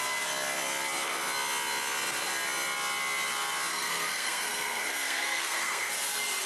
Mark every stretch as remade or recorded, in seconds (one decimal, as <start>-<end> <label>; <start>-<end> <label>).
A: 0.0-3.7 recorded; 3.7-5.9 remade; 5.9-6.5 recorded